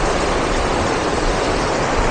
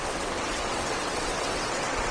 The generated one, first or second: second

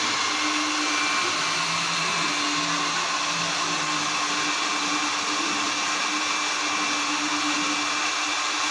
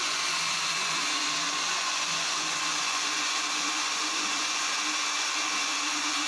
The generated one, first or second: second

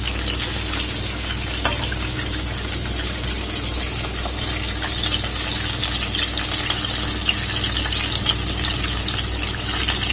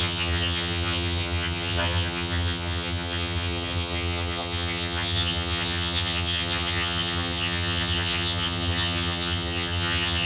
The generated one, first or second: second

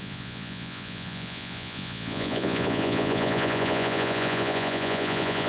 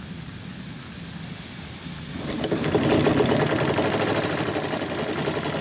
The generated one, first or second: first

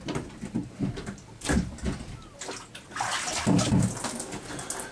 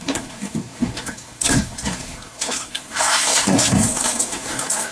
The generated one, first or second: second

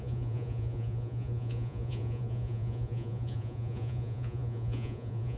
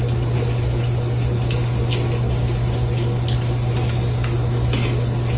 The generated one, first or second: first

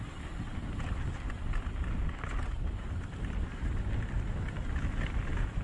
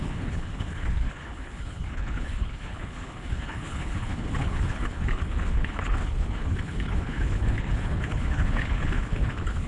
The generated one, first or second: second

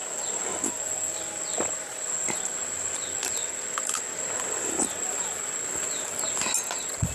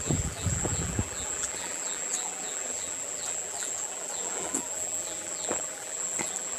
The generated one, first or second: second